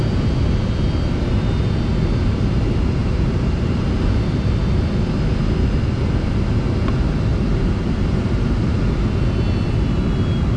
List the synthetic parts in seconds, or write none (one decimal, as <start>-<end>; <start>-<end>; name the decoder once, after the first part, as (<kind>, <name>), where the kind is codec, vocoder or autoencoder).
1.9-2.6 (vocoder, BigVGAN v2); 3.0-5.0; 7.3-8.6